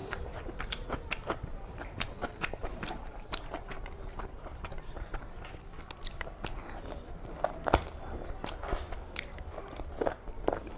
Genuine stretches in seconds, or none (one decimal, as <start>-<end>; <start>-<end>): 5.3-10.8